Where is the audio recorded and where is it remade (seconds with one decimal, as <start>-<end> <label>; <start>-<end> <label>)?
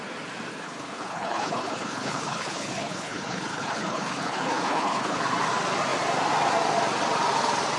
0.0-0.5 recorded; 0.5-5.2 remade; 5.2-7.8 recorded